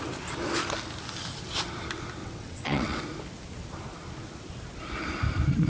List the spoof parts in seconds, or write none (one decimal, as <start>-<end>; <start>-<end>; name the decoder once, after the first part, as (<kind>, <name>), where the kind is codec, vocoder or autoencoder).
2.2-3.0 (vocoder, WaveNeXt)